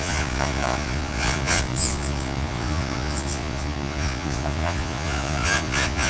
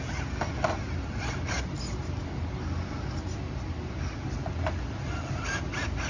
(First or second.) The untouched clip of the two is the second